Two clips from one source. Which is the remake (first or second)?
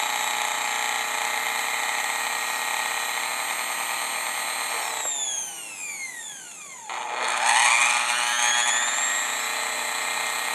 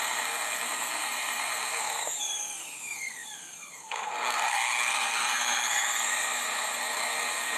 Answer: second